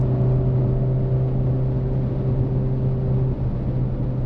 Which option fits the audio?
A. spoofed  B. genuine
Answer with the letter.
B